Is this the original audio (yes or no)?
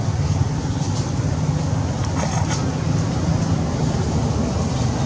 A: yes